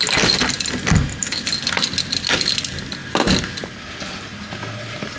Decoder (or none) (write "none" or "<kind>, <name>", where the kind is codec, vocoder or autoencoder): none